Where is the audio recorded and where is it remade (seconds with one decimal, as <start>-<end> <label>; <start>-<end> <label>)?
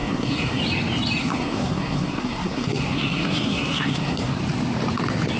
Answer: 0.0-0.6 remade; 0.6-1.2 recorded; 1.2-4.4 remade; 4.4-5.4 recorded